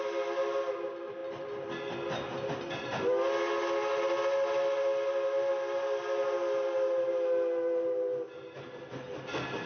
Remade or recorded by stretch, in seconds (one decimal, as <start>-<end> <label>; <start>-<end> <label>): 0.0-9.7 recorded